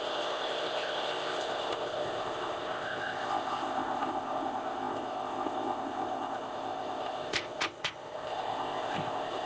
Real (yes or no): no